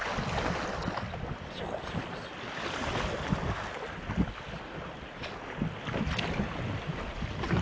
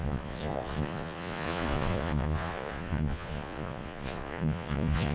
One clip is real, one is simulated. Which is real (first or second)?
first